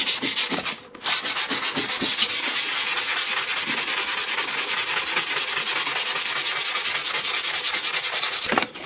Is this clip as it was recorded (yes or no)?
yes